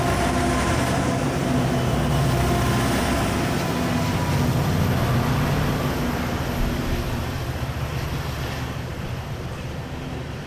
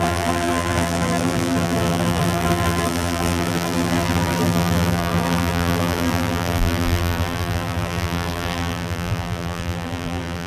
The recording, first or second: first